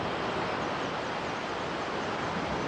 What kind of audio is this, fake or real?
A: real